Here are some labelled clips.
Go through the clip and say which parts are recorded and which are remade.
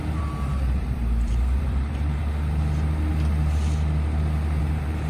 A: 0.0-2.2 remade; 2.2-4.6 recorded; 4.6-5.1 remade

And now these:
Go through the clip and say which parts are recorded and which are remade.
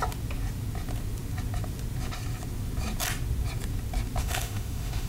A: 0.0-4.2 recorded; 4.2-5.1 remade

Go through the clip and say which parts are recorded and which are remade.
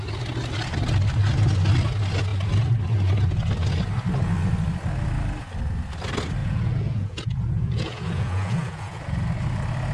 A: 0.0-6.4 recorded; 6.4-9.0 remade; 9.0-9.9 recorded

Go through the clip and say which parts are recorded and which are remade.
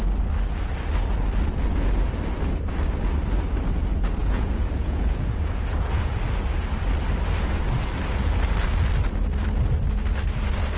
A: 0.0-4.2 recorded; 4.2-6.1 remade; 6.1-10.8 recorded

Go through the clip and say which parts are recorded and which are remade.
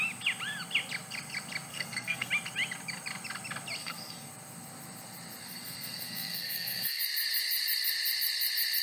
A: 0.0-1.7 recorded; 1.7-2.3 remade; 2.3-3.8 recorded; 3.8-4.3 remade; 4.3-5.4 recorded; 5.4-7.0 remade; 7.0-8.8 recorded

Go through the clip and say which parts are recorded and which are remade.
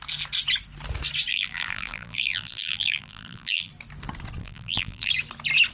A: 0.0-1.3 recorded; 1.3-3.7 remade; 3.7-4.4 recorded; 4.4-5.1 remade; 5.1-5.7 recorded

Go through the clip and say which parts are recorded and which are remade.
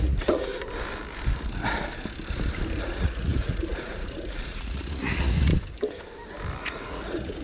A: 0.0-0.5 remade; 0.5-2.8 recorded; 2.8-5.5 remade; 5.5-6.6 recorded; 6.6-7.4 remade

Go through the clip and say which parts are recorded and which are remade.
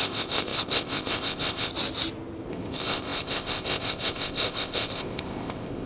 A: 0.0-1.7 remade; 1.7-2.5 recorded; 2.5-5.9 remade